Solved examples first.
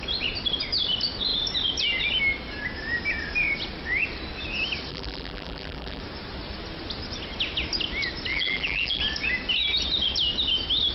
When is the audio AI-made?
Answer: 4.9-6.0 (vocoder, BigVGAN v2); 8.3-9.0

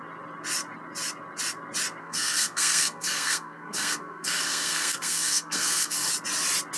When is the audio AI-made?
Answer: 2.0-6.1 (codec, SNAC)

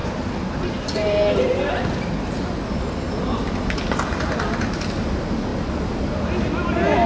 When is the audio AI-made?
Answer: none

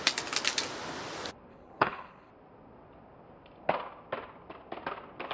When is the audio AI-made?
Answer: 1.5-2.3 (codec, HILCodec)

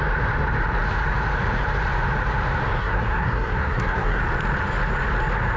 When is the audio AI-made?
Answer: 2.8-4.2 (codec, SNAC)